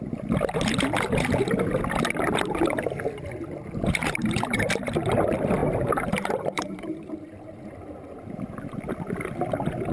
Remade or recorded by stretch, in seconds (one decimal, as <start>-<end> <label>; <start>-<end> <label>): 0.0-4.0 recorded; 4.0-4.9 remade; 4.9-5.6 recorded; 5.6-8.2 remade; 8.2-9.9 recorded